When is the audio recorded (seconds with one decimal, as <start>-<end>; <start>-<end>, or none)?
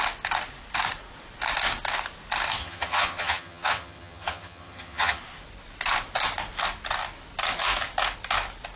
0.0-2.6; 5.2-8.8